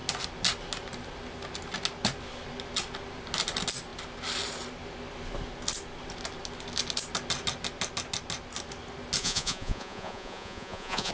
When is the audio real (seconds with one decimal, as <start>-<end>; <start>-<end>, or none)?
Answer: 0.0-9.2